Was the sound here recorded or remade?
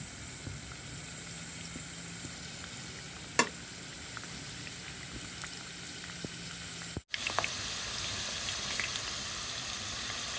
recorded